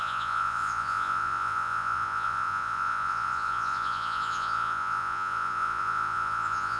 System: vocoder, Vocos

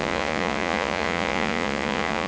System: vocoder, Vocos